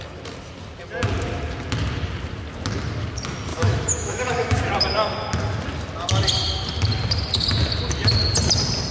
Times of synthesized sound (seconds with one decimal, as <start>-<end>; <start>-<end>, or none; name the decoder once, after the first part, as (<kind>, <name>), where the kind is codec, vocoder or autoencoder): 3.5-4.6 (autoencoder, DAC-VAE)

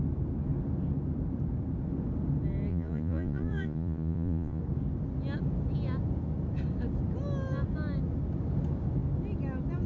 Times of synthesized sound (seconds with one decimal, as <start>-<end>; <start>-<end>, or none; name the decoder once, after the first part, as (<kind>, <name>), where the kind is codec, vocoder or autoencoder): 2.7-4.6 (vocoder, Vocos)